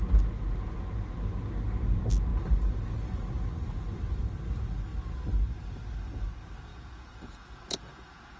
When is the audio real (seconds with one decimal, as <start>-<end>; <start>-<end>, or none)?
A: 0.0-6.7